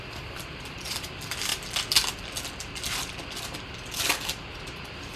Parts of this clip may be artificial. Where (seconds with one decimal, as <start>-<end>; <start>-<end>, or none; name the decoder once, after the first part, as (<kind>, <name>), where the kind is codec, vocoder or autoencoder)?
0.0-1.5 (vocoder, BigVGAN v2); 4.6-5.2